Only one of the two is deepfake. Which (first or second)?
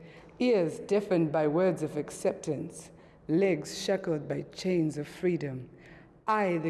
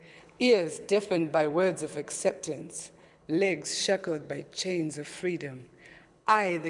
second